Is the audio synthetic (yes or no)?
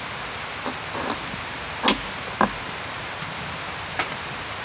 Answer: no